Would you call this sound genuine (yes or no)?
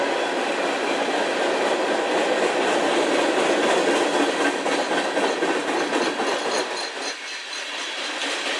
yes